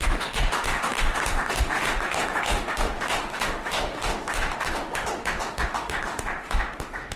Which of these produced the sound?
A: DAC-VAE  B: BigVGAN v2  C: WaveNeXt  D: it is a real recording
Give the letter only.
A